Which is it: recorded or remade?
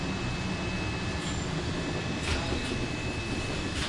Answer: recorded